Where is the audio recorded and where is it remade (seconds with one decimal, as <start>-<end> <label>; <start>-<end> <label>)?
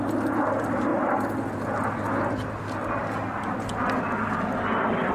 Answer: 0.0-5.1 recorded